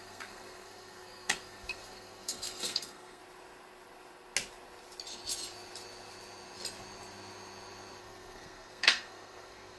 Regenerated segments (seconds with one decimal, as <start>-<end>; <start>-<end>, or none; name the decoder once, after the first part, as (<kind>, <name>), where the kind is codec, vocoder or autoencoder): 0.0-3.2 (codec, SNAC); 8.0-9.8

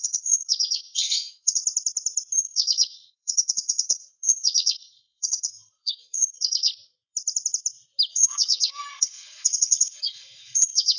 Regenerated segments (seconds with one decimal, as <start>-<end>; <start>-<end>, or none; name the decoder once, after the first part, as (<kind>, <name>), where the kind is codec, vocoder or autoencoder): 0.0-1.6 (codec, SNAC); 2.4-6.7; 8.1-11.0

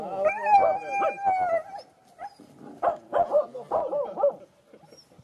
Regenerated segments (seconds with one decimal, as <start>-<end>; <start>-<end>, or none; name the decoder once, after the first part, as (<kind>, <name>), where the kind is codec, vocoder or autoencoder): none